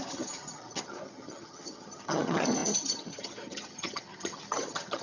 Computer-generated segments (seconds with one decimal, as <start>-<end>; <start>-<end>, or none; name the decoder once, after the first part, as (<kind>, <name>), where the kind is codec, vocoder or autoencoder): 0.0-5.0 (vocoder, HiFi-GAN)